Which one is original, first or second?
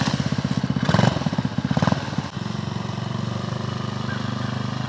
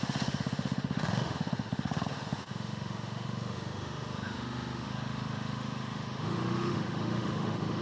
first